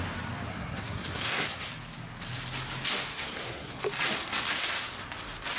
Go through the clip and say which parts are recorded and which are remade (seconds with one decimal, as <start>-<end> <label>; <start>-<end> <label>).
0.0-0.5 recorded; 0.5-1.7 remade; 1.7-3.1 recorded; 3.1-3.8 remade; 3.8-5.6 recorded